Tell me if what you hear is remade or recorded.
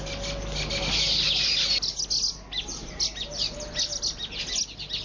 recorded